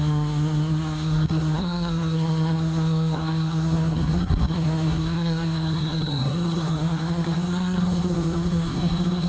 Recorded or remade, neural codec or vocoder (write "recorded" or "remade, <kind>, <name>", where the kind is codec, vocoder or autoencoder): remade, codec, SNAC